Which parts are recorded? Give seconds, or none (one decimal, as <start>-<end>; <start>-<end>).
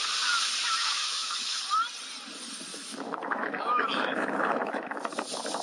0.0-0.8; 1.6-2.7; 5.0-5.6